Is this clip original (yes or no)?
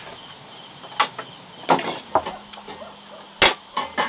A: yes